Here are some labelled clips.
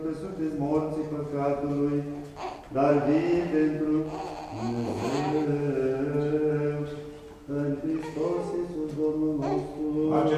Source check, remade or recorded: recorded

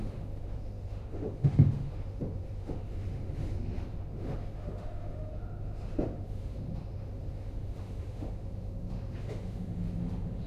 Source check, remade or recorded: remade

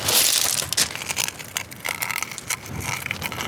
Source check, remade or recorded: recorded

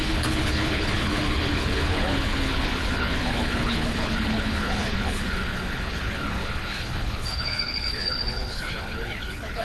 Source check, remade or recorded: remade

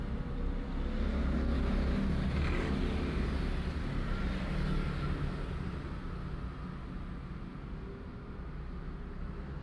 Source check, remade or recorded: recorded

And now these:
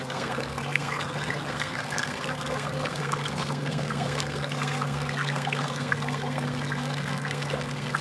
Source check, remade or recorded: remade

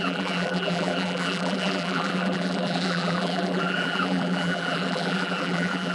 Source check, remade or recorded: remade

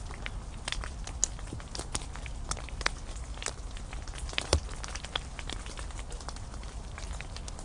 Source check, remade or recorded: recorded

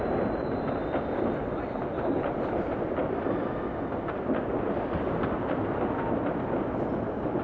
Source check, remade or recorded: recorded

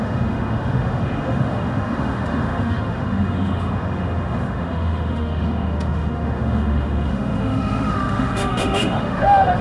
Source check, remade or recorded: remade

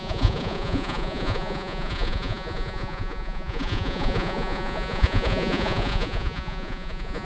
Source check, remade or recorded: remade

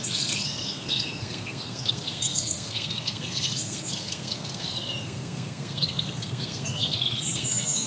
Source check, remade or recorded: remade